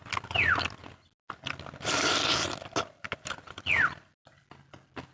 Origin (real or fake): real